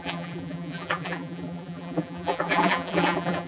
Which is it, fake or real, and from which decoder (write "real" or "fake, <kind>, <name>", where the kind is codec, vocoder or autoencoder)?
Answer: fake, vocoder, BigVGAN v2